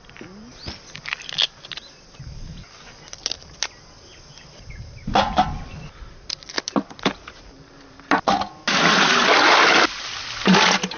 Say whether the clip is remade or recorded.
recorded